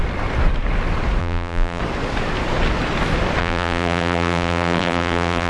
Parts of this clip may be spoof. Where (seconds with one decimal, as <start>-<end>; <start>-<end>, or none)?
1.2-1.8; 3.4-5.5